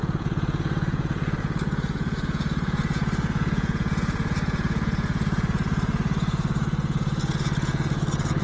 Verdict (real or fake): fake